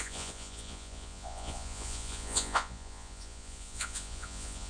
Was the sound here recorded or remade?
remade